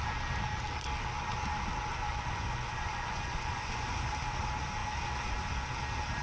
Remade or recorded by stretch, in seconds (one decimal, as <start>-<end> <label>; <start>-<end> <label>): 0.0-2.1 recorded; 2.1-4.1 remade; 4.1-6.2 recorded

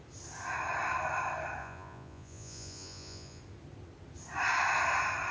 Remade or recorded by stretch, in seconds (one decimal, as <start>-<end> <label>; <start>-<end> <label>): 0.0-1.6 recorded; 1.6-3.4 remade; 3.4-5.3 recorded

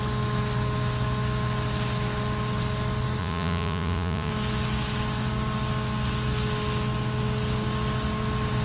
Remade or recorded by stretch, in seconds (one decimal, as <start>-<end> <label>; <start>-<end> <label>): 0.0-3.2 recorded; 3.2-4.3 remade; 4.3-8.6 recorded

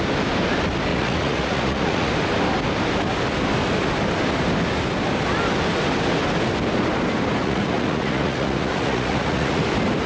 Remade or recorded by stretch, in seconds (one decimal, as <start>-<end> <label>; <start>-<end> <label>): 0.0-0.9 recorded; 0.9-2.1 remade; 2.1-7.4 recorded; 7.4-9.6 remade; 9.6-10.1 recorded